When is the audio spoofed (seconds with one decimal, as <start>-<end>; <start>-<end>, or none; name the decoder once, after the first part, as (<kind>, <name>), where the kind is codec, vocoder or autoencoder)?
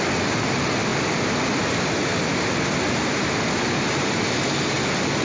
none